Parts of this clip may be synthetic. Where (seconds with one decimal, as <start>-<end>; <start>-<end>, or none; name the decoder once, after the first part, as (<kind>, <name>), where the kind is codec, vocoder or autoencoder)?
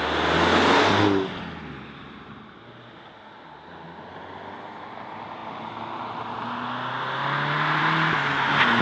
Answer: none